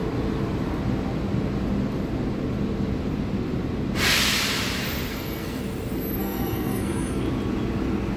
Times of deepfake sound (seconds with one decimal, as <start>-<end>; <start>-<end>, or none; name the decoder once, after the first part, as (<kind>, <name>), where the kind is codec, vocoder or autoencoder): 5.1-5.6 (codec, SNAC); 6.2-7.2